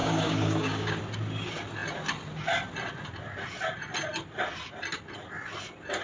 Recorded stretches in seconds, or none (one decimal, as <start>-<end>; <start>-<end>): 1.0-6.0